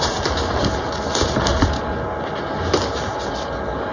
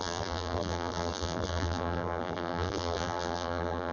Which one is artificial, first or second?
second